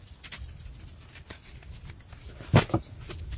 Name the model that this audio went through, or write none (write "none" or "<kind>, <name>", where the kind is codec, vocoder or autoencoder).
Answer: none